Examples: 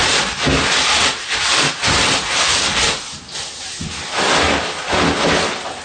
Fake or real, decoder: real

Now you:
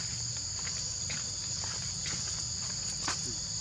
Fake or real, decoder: real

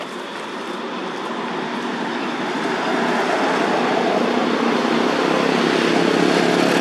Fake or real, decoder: real